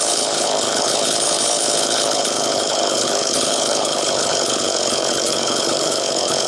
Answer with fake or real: fake